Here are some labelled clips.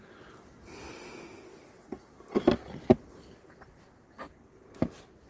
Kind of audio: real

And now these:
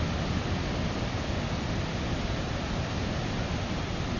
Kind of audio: real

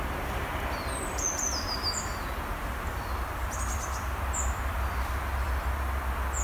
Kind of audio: real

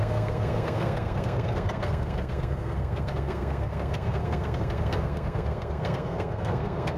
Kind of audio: fake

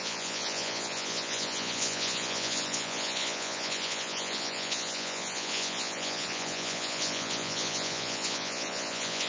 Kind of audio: fake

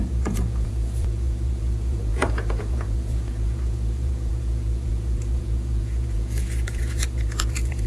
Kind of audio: fake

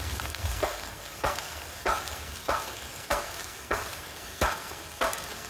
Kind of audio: fake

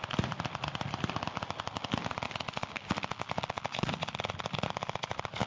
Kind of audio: real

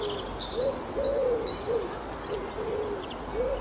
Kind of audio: real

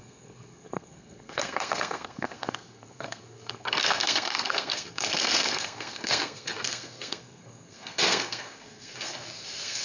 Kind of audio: fake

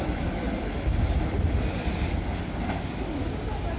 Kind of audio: real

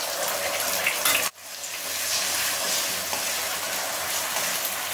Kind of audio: real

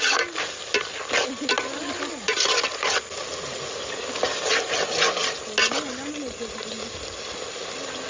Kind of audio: real